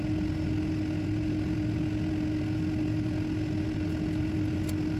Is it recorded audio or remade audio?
recorded